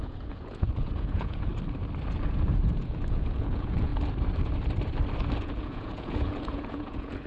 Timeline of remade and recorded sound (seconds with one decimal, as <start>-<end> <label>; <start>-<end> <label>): 0.0-1.5 remade; 1.5-2.3 recorded; 2.3-3.9 remade; 3.9-5.4 recorded; 5.4-7.3 remade